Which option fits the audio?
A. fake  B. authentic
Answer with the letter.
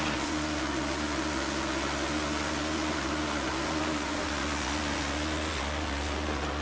A